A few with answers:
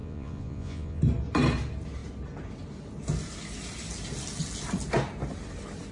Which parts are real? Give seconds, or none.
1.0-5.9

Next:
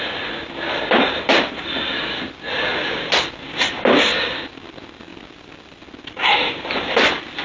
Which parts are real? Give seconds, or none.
0.0-7.4

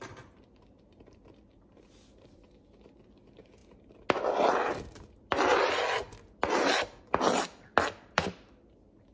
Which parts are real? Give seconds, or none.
0.0-9.1

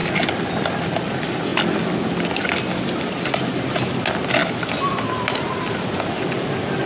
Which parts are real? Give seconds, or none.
0.0-6.9

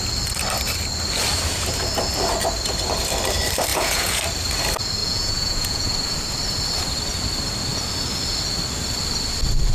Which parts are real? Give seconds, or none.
0.0-3.7; 4.2-5.0; 5.9-9.7

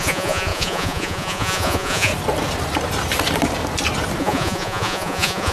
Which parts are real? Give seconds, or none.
2.1-4.2

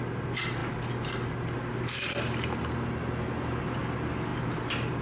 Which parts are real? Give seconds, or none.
0.0-5.0